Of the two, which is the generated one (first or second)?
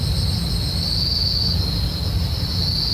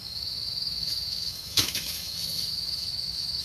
second